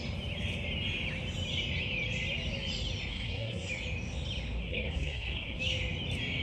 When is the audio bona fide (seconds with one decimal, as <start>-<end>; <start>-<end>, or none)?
0.0-3.1; 3.7-4.6; 5.6-6.4